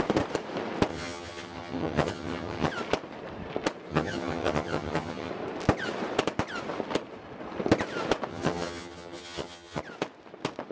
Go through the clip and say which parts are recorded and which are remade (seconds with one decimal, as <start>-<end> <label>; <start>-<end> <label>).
0.0-0.9 recorded; 0.9-2.7 remade; 2.7-3.9 recorded; 3.9-5.3 remade; 5.3-8.3 recorded; 8.3-9.8 remade; 9.8-10.7 recorded

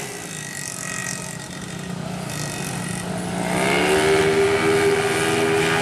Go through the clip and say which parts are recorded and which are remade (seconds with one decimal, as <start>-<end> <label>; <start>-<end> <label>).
0.0-5.8 recorded

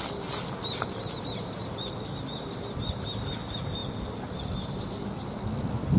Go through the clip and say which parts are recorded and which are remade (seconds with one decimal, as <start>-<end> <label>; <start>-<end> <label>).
0.0-6.0 recorded

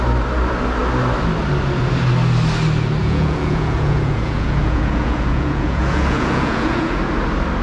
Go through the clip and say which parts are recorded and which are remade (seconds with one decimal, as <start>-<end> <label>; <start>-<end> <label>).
0.0-3.0 recorded; 3.0-7.0 remade; 7.0-7.6 recorded

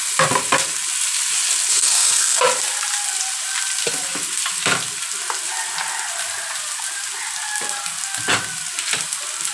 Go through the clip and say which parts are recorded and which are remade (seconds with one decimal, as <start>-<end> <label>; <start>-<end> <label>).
0.0-1.7 recorded; 1.7-2.4 remade; 2.4-9.5 recorded

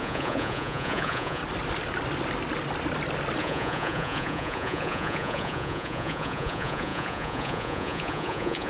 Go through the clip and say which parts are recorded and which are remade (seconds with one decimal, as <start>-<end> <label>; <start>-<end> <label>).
0.0-1.4 remade; 1.4-3.4 recorded; 3.4-8.7 remade

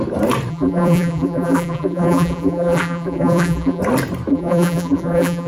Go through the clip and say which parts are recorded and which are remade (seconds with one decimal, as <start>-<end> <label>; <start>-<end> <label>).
0.0-0.5 recorded; 0.5-3.8 remade; 3.8-4.3 recorded; 4.3-5.5 remade